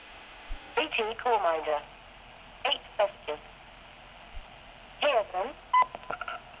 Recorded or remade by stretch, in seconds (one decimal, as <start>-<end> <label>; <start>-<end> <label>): 0.0-0.8 remade; 0.8-6.6 recorded